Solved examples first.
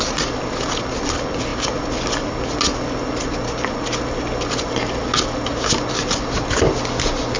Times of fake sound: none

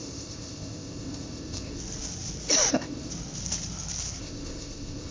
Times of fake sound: 0.0-1.8 (codec, ZipCodec); 2.7-3.1; 4.2-5.1

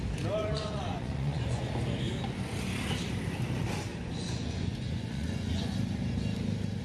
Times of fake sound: 0.4-1.7 (vocoder, Vocos); 3.9-5.7